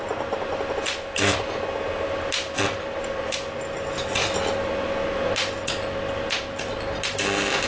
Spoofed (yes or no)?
no